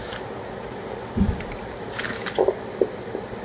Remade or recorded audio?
recorded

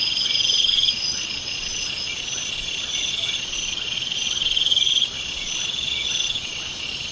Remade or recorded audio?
remade